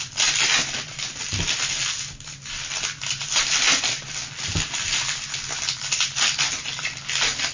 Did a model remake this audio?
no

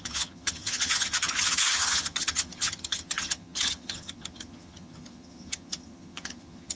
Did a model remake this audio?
yes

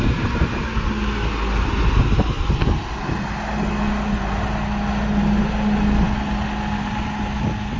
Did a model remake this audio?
no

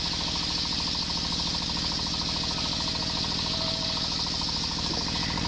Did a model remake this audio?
no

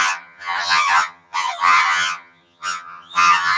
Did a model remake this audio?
yes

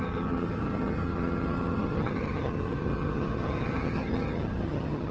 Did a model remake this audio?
yes